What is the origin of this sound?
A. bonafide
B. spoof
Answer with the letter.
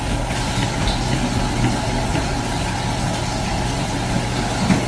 A